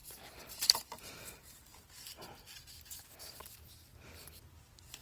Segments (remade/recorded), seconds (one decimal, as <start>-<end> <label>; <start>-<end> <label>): 0.0-1.7 remade; 1.7-5.0 recorded